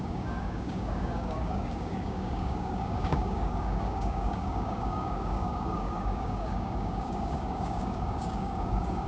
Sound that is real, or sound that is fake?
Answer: fake